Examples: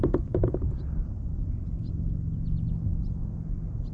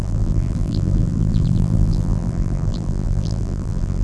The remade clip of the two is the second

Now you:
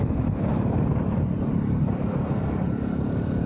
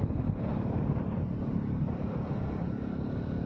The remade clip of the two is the first